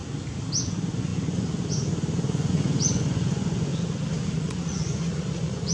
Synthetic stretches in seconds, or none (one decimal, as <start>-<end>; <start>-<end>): 0.6-3.7; 4.4-5.7